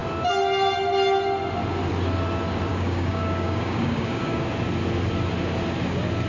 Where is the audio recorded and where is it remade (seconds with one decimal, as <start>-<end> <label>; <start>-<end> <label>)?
0.0-2.7 recorded; 2.7-4.4 remade; 4.4-6.3 recorded